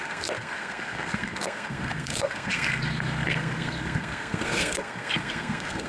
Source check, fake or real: fake